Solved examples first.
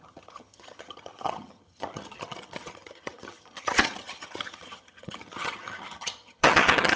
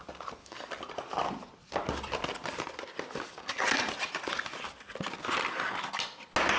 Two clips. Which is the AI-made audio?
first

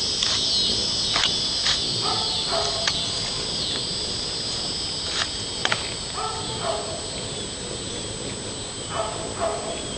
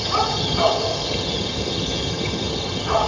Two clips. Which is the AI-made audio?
second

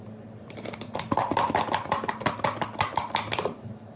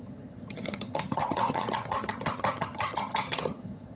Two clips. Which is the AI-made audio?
second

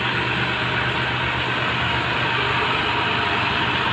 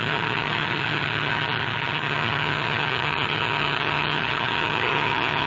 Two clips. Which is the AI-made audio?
second